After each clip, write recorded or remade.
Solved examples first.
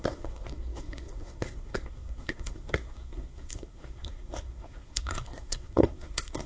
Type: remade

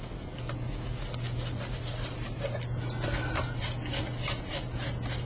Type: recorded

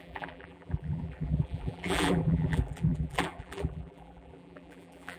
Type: remade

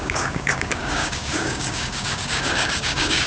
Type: remade